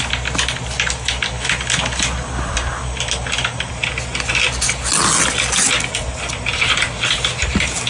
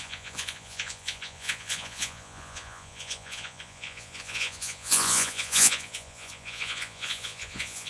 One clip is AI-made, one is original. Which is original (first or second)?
first